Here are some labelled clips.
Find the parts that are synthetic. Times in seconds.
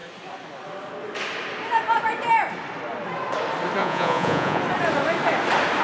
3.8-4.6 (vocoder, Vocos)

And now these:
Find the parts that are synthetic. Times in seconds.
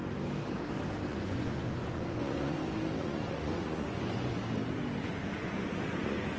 1.1-2.6 (vocoder, Vocos); 3.0-4.3; 5.1-6.4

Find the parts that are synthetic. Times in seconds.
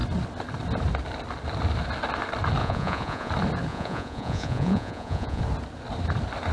2.6-3.3 (vocoder, Vocos); 3.7-5.4